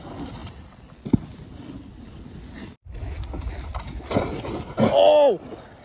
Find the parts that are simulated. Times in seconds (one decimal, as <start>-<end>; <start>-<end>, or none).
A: none